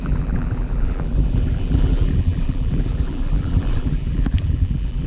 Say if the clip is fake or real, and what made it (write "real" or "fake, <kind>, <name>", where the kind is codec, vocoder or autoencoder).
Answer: fake, vocoder, BigVGAN v2